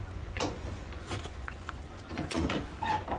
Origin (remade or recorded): remade